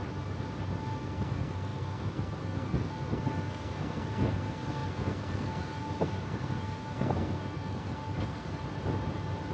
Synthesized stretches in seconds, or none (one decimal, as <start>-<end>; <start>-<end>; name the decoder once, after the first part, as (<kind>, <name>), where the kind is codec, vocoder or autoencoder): 0.8-8.6 (codec, SNAC)